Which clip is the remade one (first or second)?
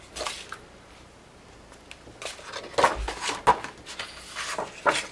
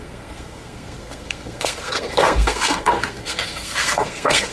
second